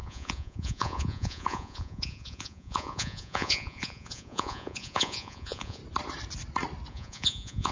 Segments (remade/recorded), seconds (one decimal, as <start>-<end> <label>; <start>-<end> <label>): 0.0-5.8 remade; 5.8-6.9 recorded; 6.9-7.7 remade